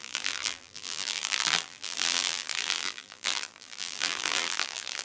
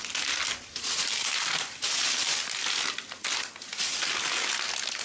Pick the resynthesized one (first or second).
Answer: first